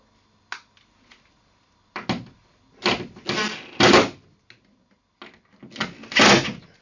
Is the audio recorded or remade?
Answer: recorded